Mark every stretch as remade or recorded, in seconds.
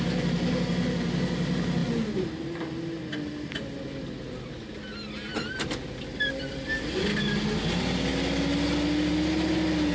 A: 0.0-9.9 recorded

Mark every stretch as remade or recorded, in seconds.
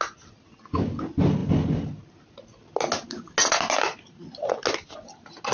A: 0.0-5.5 recorded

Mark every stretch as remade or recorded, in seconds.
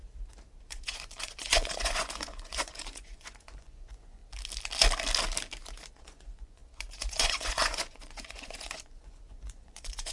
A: 0.0-0.6 recorded; 0.6-4.2 remade; 4.2-5.9 recorded; 5.9-10.1 remade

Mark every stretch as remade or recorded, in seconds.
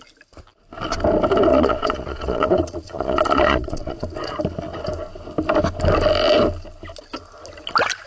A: 0.0-1.5 recorded; 1.5-4.4 remade; 4.4-8.1 recorded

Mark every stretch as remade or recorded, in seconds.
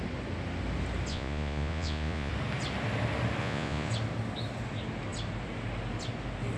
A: 0.0-1.1 recorded; 1.1-2.3 remade; 2.3-3.4 recorded; 3.4-3.9 remade; 3.9-6.6 recorded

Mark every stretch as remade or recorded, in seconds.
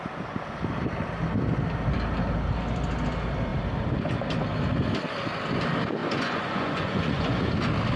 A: 0.0-6.0 recorded; 6.0-7.4 remade; 7.4-8.0 recorded